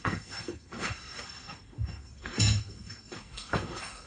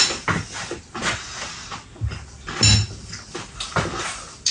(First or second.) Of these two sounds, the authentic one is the second